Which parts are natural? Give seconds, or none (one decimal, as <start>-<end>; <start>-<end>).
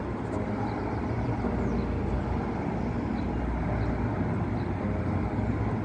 0.0-5.8